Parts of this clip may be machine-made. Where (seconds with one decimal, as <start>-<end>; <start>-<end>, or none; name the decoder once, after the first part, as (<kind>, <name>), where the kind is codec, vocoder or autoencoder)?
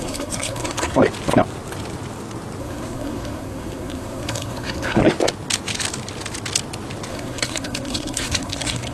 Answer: 0.0-1.0 (codec, SNAC); 2.6-5.0; 7.1-8.9